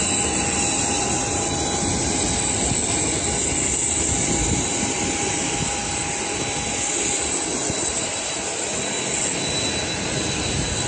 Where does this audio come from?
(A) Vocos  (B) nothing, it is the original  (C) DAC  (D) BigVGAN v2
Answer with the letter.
B